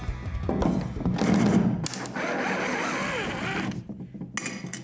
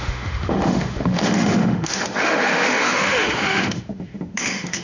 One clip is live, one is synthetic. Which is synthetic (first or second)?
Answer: second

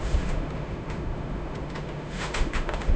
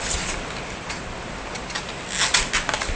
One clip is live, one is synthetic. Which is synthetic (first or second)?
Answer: first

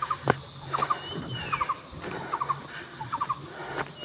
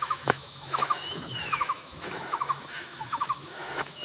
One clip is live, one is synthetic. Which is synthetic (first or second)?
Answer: second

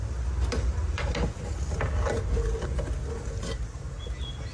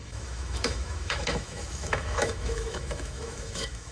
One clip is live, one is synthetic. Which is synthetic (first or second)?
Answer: second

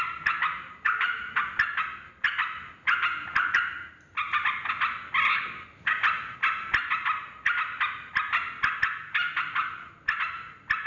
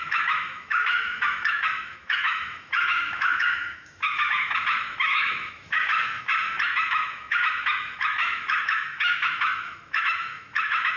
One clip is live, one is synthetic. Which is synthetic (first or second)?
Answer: second